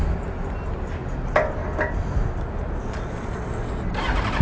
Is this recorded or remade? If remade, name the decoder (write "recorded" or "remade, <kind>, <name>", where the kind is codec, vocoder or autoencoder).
recorded